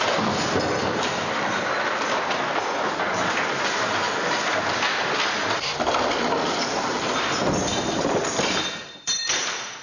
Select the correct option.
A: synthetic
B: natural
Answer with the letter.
B